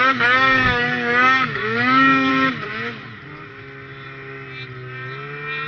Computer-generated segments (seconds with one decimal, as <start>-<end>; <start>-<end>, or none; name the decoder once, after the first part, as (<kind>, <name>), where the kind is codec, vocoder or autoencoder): 0.0-2.3 (codec, DAC)